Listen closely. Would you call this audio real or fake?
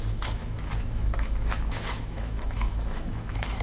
fake